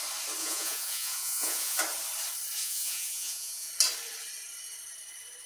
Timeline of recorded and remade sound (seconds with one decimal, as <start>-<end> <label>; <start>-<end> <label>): 0.0-0.4 recorded; 0.4-1.8 remade; 1.8-2.6 recorded; 2.6-3.7 remade; 3.7-5.5 recorded